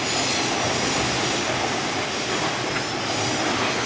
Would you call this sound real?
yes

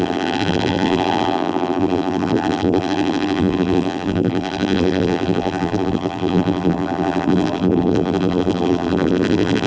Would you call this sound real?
no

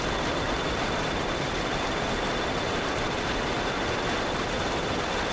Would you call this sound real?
yes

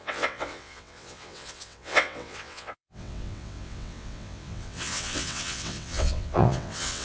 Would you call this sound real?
no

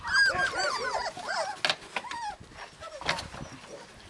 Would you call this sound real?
yes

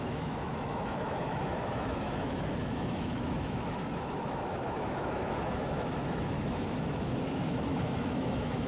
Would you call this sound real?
no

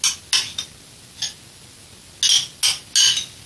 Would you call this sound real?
yes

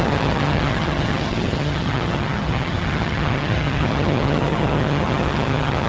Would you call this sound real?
no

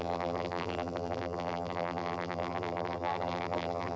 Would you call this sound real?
no